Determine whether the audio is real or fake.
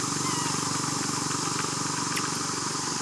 real